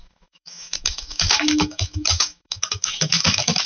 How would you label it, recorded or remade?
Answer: remade